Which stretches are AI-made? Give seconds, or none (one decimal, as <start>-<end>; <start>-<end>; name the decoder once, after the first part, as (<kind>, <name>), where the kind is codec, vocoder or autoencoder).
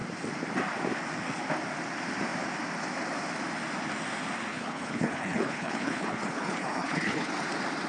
4.5-7.3 (codec, HILCodec)